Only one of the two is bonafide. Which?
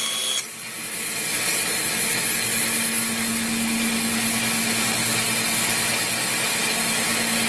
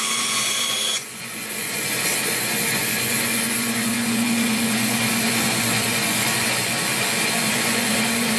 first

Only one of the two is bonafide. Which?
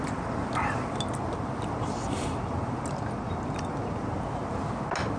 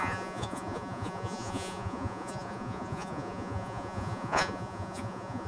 first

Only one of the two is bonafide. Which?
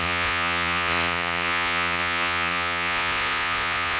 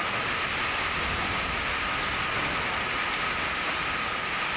second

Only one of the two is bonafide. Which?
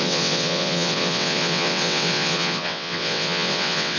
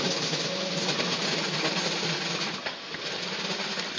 second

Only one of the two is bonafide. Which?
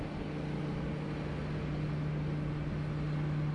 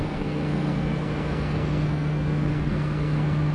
first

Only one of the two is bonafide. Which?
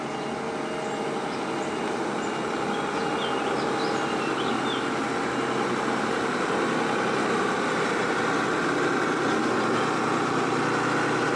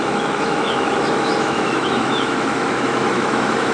first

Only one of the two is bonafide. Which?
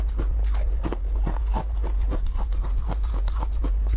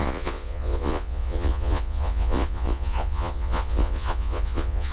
first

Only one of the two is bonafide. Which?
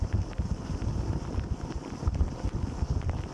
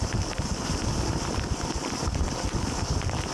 first